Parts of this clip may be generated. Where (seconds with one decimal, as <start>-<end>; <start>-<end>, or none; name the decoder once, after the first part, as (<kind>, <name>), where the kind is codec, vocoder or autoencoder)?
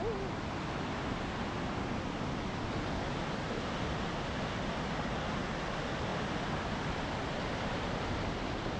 6.1-7.8 (vocoder, BigVGAN v2)